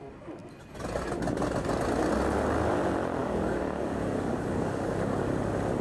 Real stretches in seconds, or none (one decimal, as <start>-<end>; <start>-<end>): 0.0-3.2; 5.2-5.8